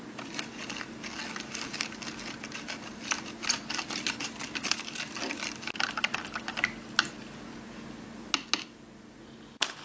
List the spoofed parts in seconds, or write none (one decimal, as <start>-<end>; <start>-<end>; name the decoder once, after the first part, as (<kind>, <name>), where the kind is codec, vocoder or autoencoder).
none